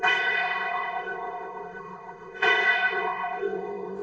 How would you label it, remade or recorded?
remade